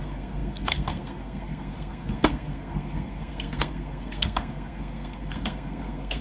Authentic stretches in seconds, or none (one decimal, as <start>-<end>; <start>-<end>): none